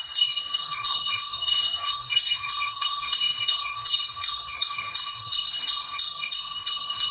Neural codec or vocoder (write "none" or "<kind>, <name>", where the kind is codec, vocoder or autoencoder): codec, SNAC